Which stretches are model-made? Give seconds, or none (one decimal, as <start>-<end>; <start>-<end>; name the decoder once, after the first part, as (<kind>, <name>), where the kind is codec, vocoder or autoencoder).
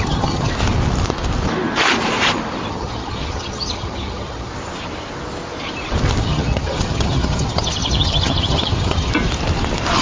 0.0-0.5 (vocoder, HiFi-GAN); 2.7-4.5; 6.2-9.1